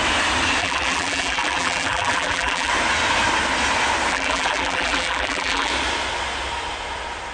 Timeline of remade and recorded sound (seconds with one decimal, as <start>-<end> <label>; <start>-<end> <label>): 0.0-0.6 recorded; 0.6-2.7 remade; 2.7-4.1 recorded; 4.1-5.7 remade; 5.7-7.3 recorded